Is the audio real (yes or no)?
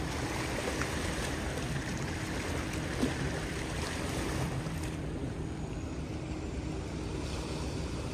yes